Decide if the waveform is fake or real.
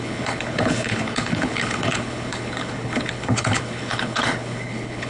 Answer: fake